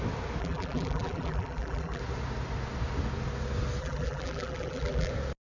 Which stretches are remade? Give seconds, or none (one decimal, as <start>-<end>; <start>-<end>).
0.4-2.0; 3.8-5.1